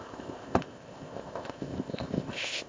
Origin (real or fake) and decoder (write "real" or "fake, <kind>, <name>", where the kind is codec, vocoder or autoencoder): fake, codec, ZipCodec